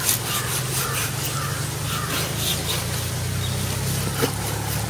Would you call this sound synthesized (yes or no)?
no